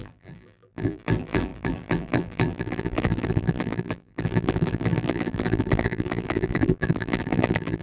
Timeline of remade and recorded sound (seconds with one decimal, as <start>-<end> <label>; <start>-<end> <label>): 0.0-7.8 remade